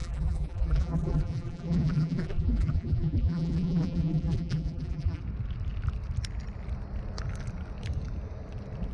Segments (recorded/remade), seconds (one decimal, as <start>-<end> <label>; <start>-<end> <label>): 0.0-5.2 remade; 5.2-8.9 recorded